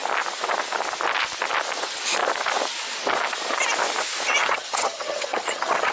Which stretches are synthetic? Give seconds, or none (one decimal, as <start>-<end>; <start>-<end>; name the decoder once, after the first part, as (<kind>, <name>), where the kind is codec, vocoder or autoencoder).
4.4-5.9 (vocoder, HiFi-GAN)